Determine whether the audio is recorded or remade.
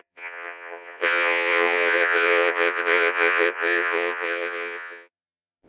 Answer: remade